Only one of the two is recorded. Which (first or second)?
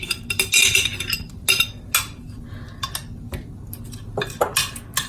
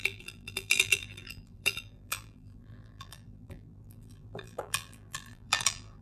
first